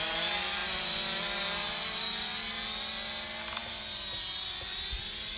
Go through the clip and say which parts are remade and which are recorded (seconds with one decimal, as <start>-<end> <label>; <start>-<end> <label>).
0.0-5.4 recorded